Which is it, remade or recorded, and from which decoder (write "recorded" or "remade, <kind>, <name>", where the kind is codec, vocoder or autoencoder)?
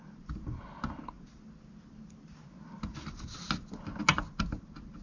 recorded